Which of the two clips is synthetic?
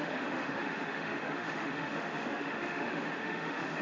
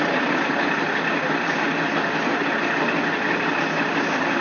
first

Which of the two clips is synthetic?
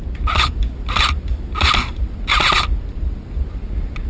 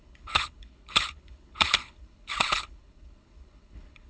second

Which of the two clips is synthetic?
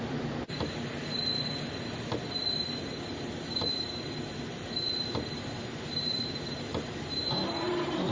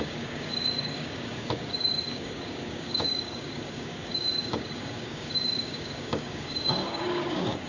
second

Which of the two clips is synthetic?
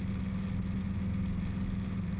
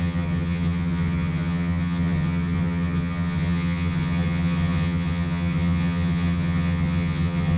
second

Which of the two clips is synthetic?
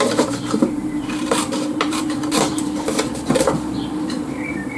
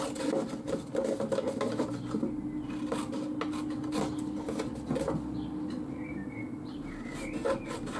first